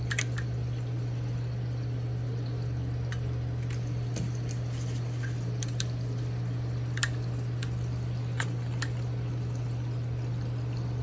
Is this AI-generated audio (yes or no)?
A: no